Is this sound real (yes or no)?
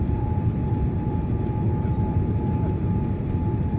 no